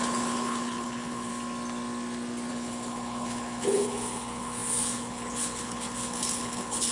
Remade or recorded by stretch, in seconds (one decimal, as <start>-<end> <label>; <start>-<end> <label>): 0.0-1.3 remade; 1.3-2.5 recorded; 2.5-6.9 remade

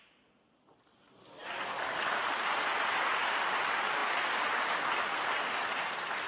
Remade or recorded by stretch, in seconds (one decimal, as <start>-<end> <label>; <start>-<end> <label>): 0.0-6.3 recorded

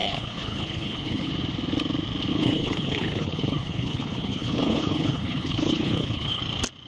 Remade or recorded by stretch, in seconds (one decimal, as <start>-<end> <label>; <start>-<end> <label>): 0.0-1.3 remade; 1.3-2.3 recorded; 2.3-6.4 remade; 6.4-6.9 recorded

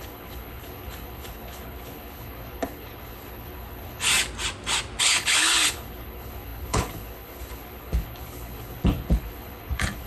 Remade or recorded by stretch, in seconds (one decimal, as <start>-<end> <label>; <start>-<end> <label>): 0.0-4.1 remade; 4.1-5.0 recorded; 5.0-10.1 remade

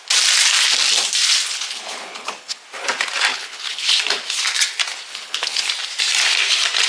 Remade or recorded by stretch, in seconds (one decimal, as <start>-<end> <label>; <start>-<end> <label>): 0.0-1.5 recorded; 1.5-2.6 remade; 2.6-3.3 recorded; 3.3-3.9 remade; 3.9-5.1 recorded; 5.1-5.7 remade; 5.7-6.9 recorded

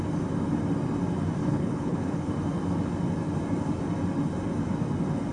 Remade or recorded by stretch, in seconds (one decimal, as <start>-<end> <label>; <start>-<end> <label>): 0.0-1.4 recorded; 1.4-2.3 remade; 2.3-5.3 recorded

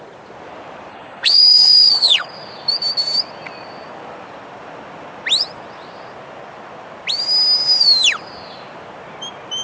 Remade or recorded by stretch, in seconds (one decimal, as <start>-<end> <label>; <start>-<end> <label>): 0.0-0.9 recorded; 0.9-2.3 remade; 2.3-9.6 recorded

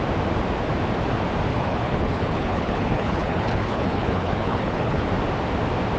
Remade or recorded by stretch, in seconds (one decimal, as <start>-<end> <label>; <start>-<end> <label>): 0.0-1.5 recorded; 1.5-5.1 remade; 5.1-6.0 recorded